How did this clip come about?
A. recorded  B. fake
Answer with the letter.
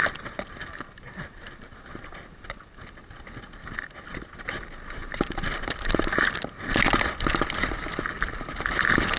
A